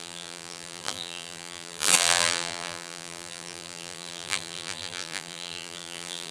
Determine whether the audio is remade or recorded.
remade